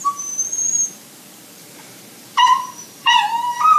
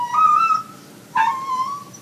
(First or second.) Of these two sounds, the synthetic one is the first